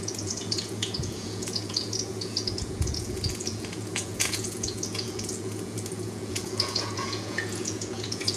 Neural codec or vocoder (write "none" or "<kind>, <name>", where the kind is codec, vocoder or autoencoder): vocoder, Vocos